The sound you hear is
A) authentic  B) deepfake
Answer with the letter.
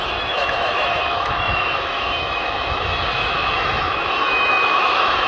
B